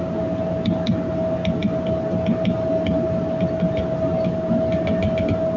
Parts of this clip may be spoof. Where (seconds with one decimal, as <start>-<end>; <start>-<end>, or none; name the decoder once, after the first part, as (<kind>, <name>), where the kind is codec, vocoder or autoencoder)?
none

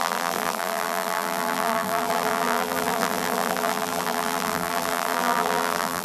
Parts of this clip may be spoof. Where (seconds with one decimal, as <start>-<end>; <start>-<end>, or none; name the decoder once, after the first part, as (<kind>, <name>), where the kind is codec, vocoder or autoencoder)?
0.0-6.0 (vocoder, BigVGAN v2)

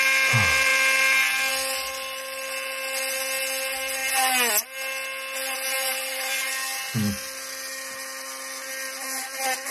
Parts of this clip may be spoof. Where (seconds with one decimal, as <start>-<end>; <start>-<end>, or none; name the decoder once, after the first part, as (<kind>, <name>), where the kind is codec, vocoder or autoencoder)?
5.7-6.5 (vocoder, BigVGAN v2)

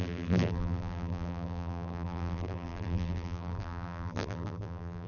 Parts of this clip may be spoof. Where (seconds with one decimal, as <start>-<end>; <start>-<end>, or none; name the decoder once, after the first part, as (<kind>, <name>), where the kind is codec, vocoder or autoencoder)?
0.0-5.1 (vocoder, BigVGAN v2)

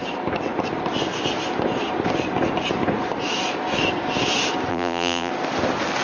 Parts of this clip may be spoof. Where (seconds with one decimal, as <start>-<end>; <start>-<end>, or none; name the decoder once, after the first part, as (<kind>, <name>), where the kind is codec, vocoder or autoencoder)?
4.7-5.3 (vocoder, BigVGAN v2)